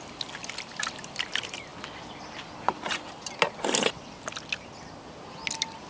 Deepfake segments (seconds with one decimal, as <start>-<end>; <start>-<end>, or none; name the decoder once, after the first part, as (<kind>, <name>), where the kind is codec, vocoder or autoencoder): none